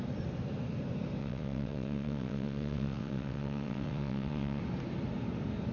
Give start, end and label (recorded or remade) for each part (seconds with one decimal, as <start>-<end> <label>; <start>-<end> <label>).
0.0-1.2 recorded; 1.2-4.6 remade; 4.6-5.7 recorded